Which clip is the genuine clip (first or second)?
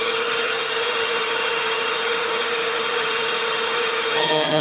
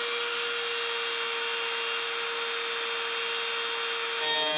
second